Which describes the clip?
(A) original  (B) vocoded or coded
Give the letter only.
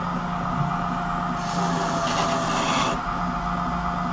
A